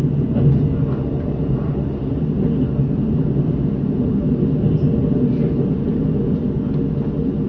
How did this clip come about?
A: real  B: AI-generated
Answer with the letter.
A